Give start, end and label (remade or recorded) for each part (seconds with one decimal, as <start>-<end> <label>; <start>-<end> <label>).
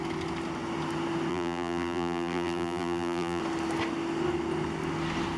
0.0-1.3 recorded; 1.3-3.4 remade; 3.4-5.4 recorded